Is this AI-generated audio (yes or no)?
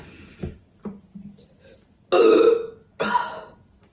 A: no